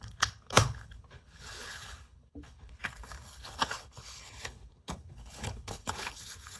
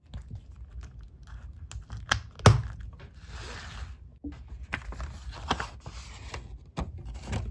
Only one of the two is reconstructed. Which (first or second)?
first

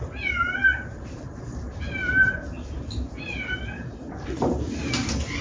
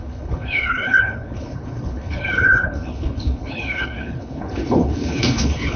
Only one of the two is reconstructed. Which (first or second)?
second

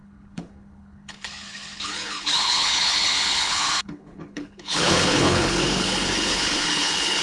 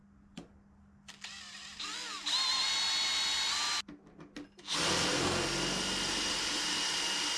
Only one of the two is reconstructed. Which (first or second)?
first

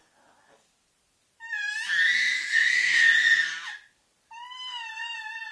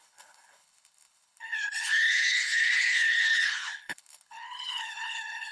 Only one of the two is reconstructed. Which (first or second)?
second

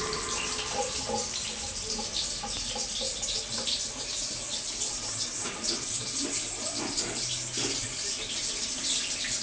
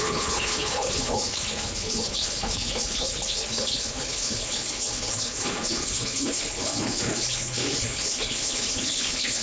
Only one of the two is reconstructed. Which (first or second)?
second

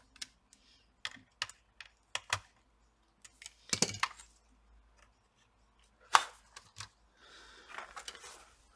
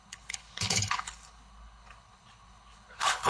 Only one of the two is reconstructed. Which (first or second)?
second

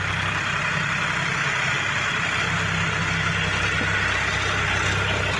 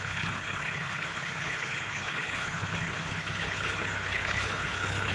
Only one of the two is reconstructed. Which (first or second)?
second